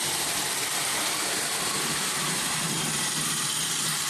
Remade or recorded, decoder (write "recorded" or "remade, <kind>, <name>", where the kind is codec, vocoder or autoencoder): remade, vocoder, BigVGAN v2